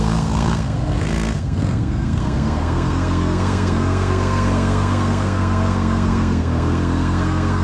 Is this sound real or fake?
fake